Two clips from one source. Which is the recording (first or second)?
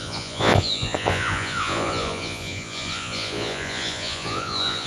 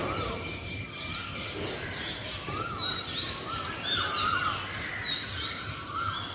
second